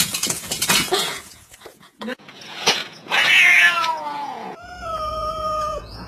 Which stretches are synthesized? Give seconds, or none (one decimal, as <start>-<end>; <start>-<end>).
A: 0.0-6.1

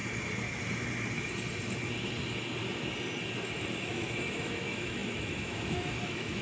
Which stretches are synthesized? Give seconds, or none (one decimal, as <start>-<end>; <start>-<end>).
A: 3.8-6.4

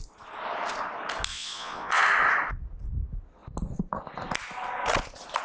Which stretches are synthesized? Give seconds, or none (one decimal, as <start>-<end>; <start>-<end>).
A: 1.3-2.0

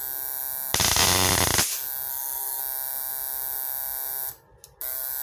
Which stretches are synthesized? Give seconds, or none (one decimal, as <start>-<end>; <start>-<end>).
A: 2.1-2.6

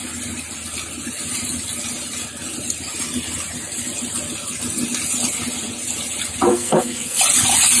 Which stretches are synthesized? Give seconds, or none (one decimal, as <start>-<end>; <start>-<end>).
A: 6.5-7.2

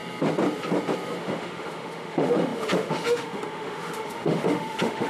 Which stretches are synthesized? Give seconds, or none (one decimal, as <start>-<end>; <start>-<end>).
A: 1.2-5.1

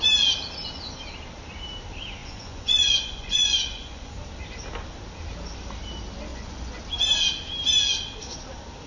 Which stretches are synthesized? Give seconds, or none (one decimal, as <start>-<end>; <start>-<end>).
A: 2.2-4.1; 6.3-6.8